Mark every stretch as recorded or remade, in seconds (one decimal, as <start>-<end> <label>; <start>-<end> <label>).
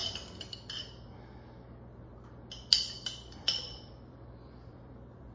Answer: 0.0-3.2 recorded; 3.2-5.3 remade